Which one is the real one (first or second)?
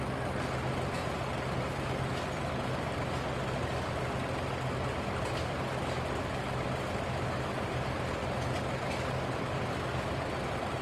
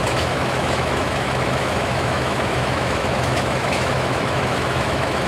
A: first